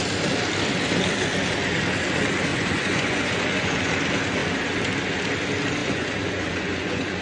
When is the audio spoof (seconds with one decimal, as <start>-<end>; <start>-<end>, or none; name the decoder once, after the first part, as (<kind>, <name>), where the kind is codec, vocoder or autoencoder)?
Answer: 2.5-3.9 (vocoder, Vocos); 5.8-7.2